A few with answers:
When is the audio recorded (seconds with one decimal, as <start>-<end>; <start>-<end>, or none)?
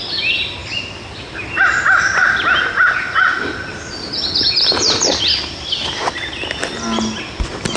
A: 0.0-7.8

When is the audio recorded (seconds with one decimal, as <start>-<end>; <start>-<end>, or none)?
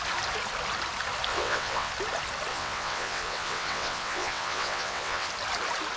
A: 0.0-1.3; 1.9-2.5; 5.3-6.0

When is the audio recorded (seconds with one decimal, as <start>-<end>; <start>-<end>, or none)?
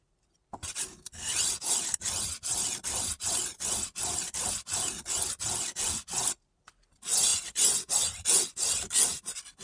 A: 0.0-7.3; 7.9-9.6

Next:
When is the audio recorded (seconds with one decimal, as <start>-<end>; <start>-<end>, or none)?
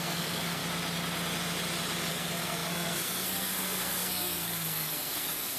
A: 0.6-2.1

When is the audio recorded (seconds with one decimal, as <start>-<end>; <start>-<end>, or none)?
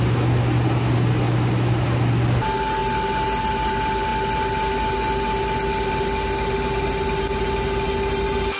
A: 0.0-8.6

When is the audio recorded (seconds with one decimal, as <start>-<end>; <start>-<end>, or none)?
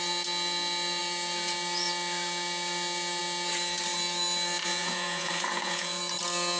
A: 0.0-4.6; 6.0-6.6